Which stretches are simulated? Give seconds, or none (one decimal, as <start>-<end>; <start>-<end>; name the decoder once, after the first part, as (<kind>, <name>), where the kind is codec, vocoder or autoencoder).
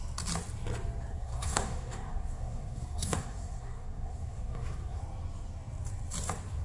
1.1-5.0 (codec, SNAC)